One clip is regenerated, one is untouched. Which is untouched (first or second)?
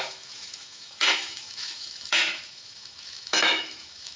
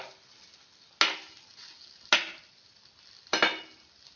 second